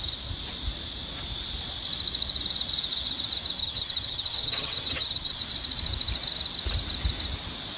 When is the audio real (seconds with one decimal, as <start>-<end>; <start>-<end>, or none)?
0.0-3.6; 5.4-7.8